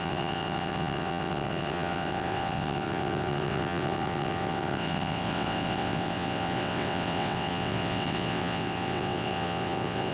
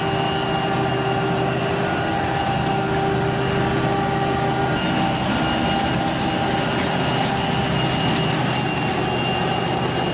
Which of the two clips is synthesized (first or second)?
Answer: first